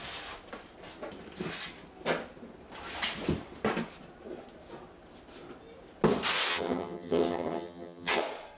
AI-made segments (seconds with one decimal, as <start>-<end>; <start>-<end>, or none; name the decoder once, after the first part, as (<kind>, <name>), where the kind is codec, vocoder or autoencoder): 6.5-8.2 (vocoder, HiFi-GAN)